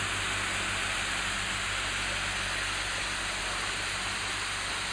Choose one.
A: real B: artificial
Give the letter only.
A